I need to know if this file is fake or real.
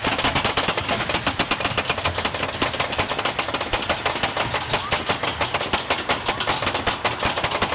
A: real